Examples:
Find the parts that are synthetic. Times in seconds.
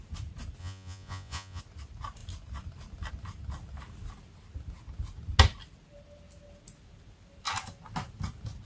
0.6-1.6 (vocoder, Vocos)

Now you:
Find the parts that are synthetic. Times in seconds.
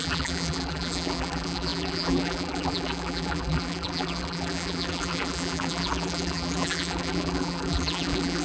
0.0-8.4 (vocoder, BigVGAN v2)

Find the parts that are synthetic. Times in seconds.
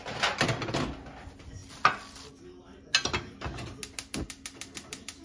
none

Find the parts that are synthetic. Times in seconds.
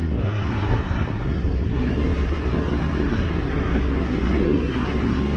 0.0-5.4 (codec, SNAC)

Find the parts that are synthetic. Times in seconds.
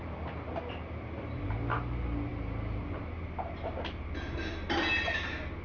none